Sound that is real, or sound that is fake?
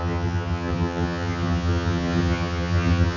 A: fake